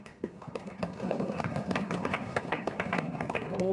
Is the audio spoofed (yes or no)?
yes